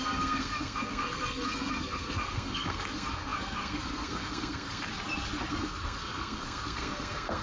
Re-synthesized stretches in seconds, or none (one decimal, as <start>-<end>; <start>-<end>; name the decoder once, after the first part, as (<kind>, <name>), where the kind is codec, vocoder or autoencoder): 0.0-4.9 (codec, SNAC); 5.5-7.4